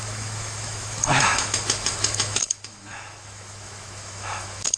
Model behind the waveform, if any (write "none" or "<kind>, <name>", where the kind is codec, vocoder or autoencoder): autoencoder, DAC-VAE